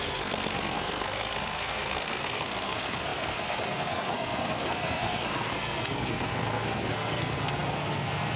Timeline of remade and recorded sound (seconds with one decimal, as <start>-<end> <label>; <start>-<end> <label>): 0.0-8.4 remade